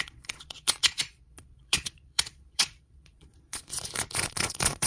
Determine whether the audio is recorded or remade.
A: remade